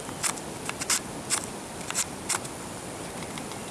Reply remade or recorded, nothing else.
remade